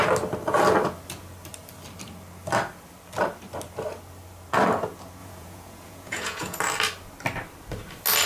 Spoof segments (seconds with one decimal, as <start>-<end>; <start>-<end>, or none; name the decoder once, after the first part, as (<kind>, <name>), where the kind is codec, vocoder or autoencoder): 5.2-6.6 (vocoder, Vocos)